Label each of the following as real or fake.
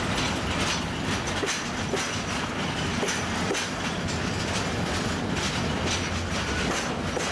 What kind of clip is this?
real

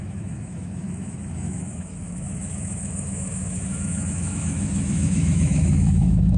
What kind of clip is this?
fake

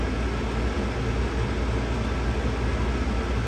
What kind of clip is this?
real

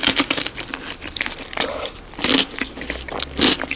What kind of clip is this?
real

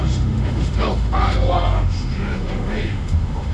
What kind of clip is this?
fake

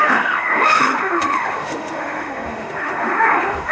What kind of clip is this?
fake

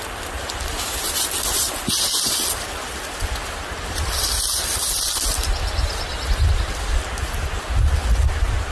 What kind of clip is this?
real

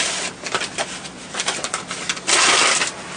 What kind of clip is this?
real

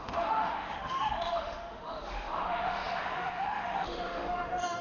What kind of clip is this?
fake